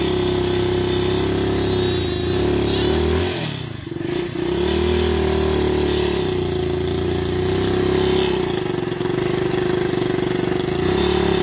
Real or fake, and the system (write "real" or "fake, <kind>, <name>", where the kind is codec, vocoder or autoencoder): real